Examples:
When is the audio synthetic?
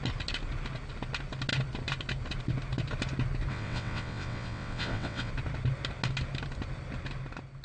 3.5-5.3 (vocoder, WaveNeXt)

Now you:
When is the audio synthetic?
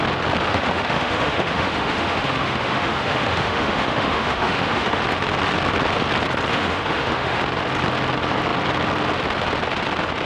0.5-5.0 (autoencoder, DAC-VAE); 6.5-7.4